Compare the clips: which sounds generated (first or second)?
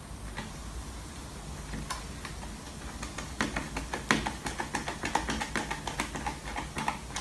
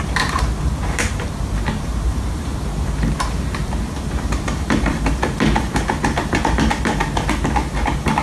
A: second